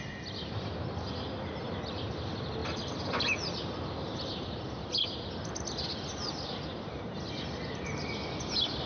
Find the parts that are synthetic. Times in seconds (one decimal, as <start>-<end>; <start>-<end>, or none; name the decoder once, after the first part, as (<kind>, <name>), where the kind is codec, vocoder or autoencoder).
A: none

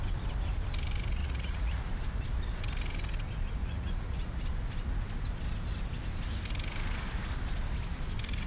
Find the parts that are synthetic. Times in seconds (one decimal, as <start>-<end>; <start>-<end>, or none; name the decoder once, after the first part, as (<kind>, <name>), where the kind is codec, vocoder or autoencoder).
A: 1.2-1.9 (vocoder, Vocos); 3.6-4.4

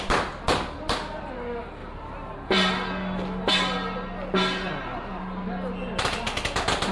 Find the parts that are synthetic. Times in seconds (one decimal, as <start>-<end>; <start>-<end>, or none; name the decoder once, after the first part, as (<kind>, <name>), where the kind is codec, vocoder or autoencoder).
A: none

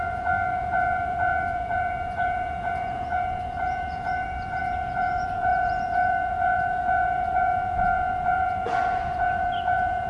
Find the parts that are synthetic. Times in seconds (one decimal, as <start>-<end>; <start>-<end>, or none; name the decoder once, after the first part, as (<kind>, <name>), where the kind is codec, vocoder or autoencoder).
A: 0.0-10.1 (vocoder, Vocos)

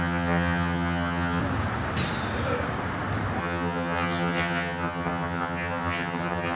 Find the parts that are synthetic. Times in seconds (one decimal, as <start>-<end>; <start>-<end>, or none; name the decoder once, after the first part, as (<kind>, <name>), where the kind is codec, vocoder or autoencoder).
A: 0.0-1.4 (vocoder, HiFi-GAN); 3.4-6.6

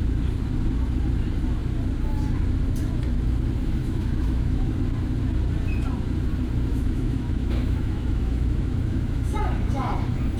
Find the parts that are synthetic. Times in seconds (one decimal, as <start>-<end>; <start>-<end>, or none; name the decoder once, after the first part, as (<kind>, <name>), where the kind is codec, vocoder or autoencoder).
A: 3.8-4.7 (autoencoder, DAC-VAE); 6.7-9.9

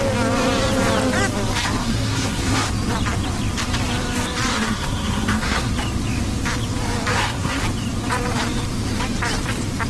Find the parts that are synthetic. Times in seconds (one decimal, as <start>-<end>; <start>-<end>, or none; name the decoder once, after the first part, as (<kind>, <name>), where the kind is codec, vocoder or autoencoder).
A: 1.8-2.7 (codec, SNAC); 4.5-5.7; 7.1-7.6